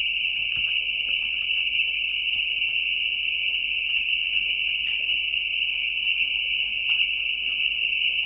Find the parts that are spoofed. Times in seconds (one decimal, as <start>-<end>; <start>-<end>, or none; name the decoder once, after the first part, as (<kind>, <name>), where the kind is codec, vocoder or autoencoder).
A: none